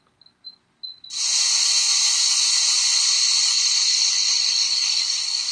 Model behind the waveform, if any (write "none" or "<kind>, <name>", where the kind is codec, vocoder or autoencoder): none